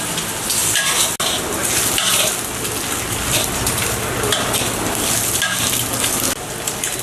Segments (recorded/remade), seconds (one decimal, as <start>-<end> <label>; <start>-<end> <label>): 0.0-7.0 recorded